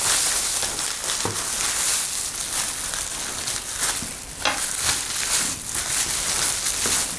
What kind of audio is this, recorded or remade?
recorded